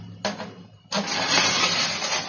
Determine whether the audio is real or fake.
real